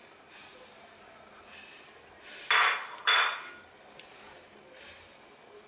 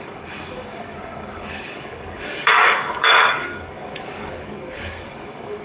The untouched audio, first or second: first